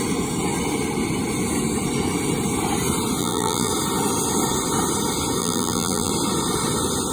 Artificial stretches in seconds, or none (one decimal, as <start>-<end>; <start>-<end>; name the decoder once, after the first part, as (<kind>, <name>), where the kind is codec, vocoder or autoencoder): 3.2-3.7 (vocoder, BigVGAN v2); 5.4-6.1